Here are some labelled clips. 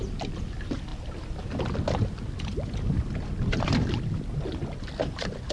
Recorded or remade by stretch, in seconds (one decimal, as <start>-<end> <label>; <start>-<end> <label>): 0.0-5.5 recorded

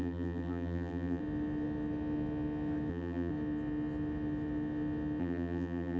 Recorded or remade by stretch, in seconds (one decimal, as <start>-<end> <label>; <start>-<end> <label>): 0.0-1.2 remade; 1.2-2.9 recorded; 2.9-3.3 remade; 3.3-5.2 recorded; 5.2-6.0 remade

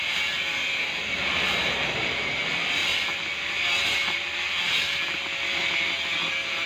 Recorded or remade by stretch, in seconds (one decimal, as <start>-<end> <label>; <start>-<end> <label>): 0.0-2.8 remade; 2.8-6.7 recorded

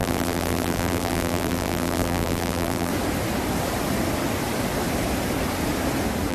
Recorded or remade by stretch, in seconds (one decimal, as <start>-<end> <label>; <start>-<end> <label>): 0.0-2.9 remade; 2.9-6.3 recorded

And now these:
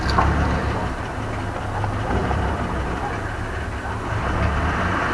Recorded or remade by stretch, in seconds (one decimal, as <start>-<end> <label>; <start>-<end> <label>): 0.0-2.2 recorded; 2.2-3.1 remade; 3.1-5.1 recorded